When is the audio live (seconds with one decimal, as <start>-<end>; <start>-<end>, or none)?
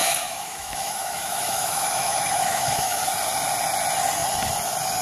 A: 3.0-5.0